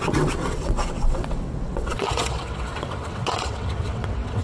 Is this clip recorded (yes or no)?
no